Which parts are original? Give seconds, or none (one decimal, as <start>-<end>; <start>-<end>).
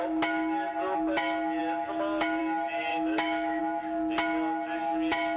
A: 0.0-2.9; 3.6-5.4